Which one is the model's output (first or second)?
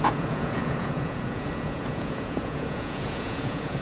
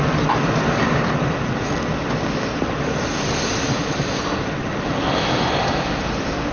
first